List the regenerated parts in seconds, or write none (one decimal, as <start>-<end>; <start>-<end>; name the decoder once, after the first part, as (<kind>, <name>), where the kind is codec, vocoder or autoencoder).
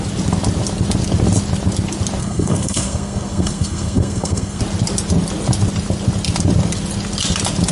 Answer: 2.2-4.6 (codec, SNAC)